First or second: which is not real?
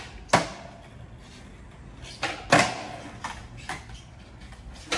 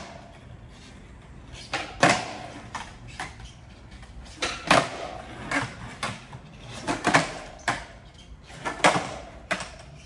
second